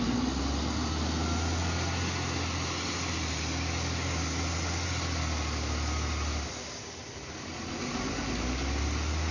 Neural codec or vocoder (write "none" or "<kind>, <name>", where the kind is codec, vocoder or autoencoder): none